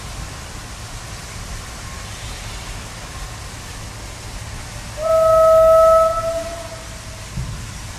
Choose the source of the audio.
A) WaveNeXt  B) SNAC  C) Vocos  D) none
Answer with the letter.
D